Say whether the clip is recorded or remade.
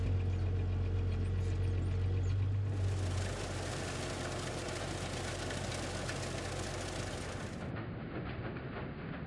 recorded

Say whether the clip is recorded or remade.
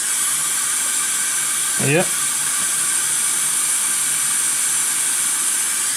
recorded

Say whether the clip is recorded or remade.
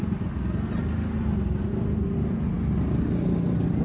recorded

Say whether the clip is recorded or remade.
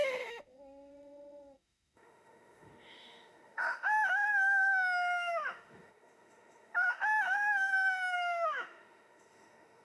remade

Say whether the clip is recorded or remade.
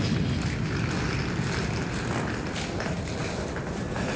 recorded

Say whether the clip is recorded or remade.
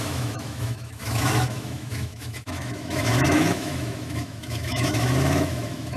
remade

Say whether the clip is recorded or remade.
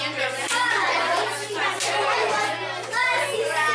recorded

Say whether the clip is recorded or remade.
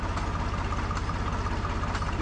recorded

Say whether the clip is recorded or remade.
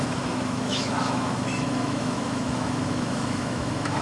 remade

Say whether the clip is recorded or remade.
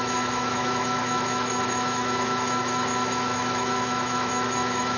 remade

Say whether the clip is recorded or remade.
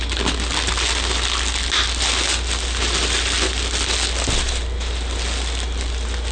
recorded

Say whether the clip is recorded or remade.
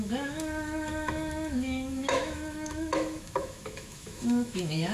remade